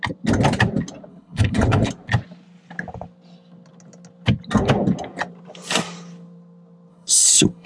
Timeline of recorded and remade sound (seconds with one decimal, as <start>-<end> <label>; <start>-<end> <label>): 0.0-1.1 recorded; 1.1-1.9 remade; 1.9-6.9 recorded; 6.9-7.7 remade